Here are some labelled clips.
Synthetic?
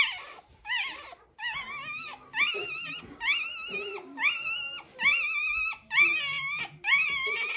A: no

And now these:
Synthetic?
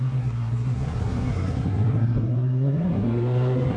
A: yes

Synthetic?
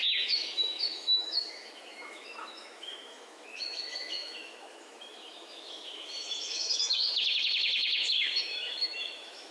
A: yes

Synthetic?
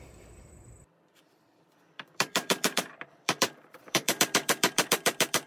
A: yes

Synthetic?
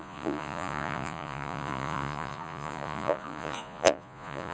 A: yes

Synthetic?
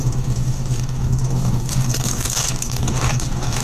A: yes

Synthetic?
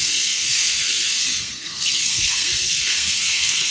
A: yes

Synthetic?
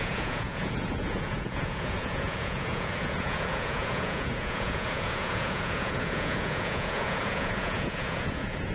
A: yes